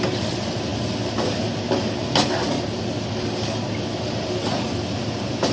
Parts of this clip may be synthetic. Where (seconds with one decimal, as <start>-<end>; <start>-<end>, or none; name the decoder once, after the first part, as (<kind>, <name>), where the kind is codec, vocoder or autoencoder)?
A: none